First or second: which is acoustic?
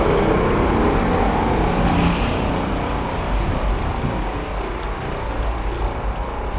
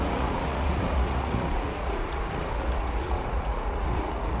first